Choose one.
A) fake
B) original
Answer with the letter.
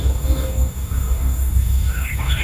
A